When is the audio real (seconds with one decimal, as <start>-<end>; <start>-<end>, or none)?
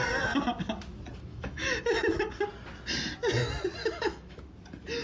0.0-1.3; 2.3-3.8; 4.4-5.0